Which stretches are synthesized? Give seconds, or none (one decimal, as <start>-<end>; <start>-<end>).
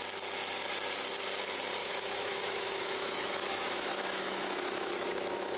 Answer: 1.8-5.6